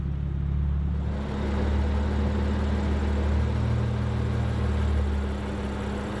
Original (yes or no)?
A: yes